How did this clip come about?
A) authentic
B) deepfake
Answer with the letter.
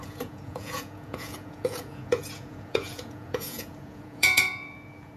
B